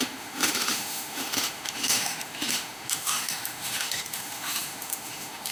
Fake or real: fake